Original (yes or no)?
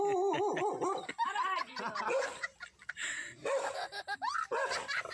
yes